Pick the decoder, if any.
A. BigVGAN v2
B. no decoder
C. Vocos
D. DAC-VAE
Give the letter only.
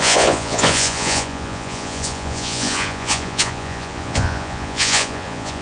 C